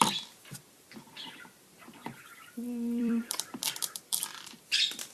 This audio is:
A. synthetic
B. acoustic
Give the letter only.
A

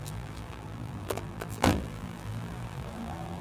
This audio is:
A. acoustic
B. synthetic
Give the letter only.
B